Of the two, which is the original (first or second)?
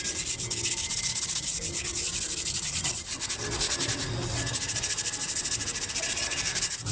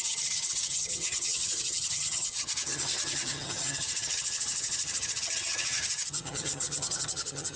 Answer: first